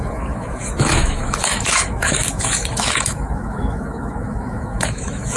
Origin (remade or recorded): remade